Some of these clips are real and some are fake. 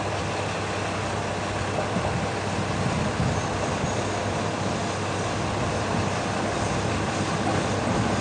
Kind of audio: real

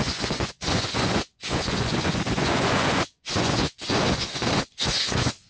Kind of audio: fake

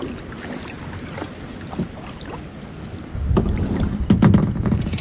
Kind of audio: real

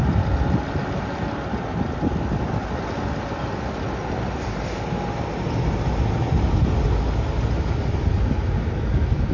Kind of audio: real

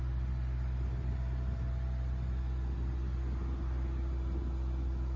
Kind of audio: real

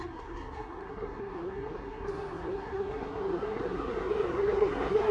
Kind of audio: fake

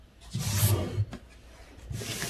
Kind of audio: real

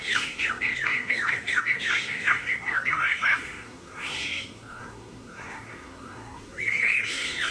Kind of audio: fake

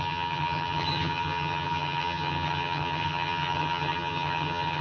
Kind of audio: fake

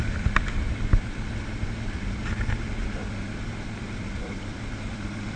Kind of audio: fake